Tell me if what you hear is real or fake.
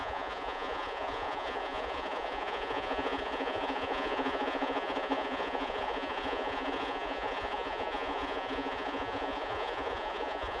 fake